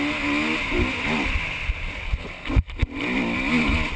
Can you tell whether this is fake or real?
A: real